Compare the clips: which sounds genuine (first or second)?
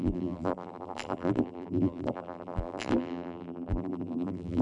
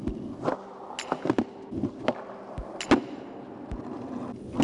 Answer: second